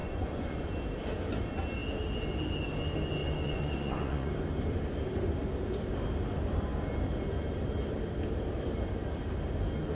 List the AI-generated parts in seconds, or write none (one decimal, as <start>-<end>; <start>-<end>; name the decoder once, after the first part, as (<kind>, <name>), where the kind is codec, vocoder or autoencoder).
0.0-0.7 (vocoder, Vocos); 3.2-4.3

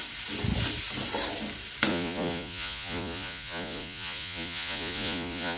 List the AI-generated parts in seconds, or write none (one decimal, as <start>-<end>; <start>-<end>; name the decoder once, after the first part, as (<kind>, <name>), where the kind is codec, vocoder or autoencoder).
1.9-5.6 (vocoder, Vocos)